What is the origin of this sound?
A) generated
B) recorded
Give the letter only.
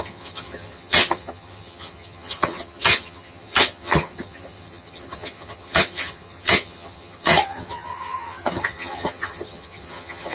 A